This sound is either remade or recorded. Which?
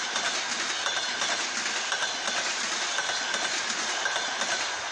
recorded